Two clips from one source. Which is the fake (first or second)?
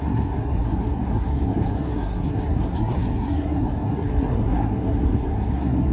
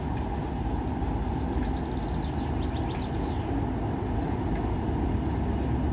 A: first